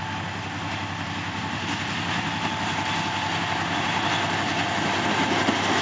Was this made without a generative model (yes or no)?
yes